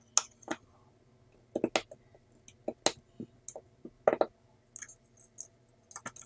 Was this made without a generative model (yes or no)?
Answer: yes